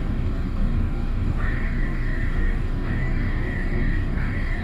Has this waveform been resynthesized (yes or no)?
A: yes